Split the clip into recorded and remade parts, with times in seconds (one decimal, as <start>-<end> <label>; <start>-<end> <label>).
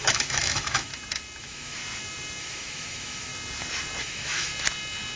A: 0.0-0.9 remade; 0.9-1.4 recorded; 1.4-1.8 remade; 1.8-2.4 recorded; 2.4-3.3 remade; 3.3-4.0 recorded; 4.0-4.5 remade; 4.5-5.2 recorded